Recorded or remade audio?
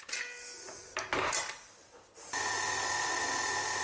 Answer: recorded